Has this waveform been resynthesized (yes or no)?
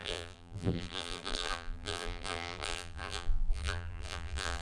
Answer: yes